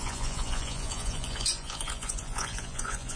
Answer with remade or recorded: remade